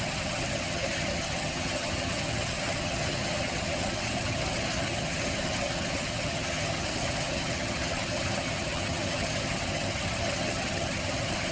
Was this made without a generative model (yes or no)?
no